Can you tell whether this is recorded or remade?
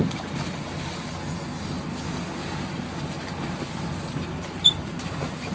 recorded